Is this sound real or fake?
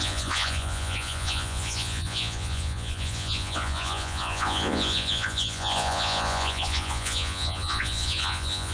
fake